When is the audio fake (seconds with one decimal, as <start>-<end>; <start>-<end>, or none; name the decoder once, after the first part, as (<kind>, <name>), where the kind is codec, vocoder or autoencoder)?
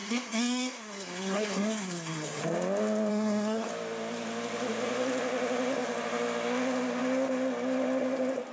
0.0-2.4 (codec, SNAC); 3.1-3.7